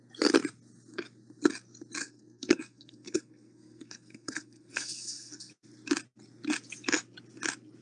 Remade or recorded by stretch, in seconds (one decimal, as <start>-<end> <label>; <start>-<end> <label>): 0.0-2.0 recorded; 2.0-5.5 remade; 5.5-7.8 recorded